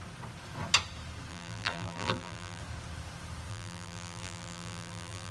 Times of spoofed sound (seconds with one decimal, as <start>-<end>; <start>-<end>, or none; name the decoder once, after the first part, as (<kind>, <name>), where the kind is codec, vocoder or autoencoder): 1.3-2.6 (vocoder, BigVGAN v2); 3.5-5.3